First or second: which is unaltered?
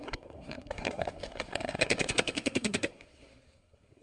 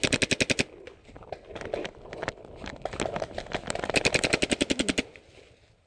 second